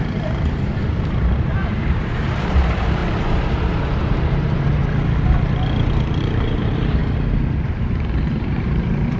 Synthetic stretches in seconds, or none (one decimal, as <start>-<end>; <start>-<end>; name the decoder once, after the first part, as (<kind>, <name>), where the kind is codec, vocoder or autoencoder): 0.0-3.0 (vocoder, BigVGAN v2); 4.0-4.8; 6.2-7.0; 7.7-9.2